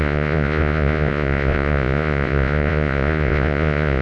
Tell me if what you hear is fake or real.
fake